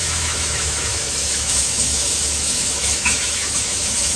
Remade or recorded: remade